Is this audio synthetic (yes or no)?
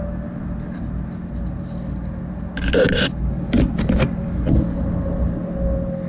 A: no